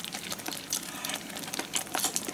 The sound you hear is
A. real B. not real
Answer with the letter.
B